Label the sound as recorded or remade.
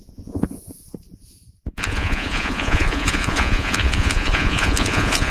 remade